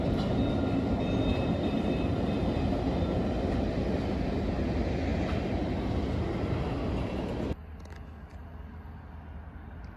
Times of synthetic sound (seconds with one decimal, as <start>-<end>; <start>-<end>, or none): 1.3-2.4